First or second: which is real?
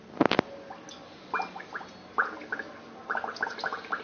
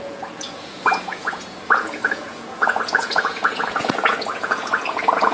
first